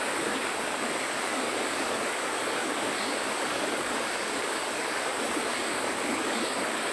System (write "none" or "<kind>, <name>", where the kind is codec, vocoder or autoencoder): codec, DAC